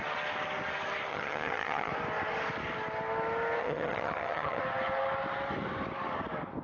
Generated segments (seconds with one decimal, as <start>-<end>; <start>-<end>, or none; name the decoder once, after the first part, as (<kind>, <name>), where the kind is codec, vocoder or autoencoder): 1.1-1.9 (vocoder, HiFi-GAN); 3.6-4.6